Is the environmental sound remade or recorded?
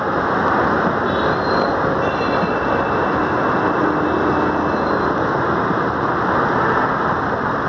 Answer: recorded